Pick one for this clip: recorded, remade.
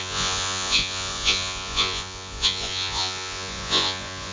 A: remade